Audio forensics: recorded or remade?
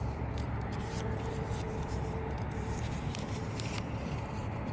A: remade